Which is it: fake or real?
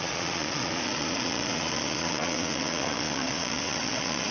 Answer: fake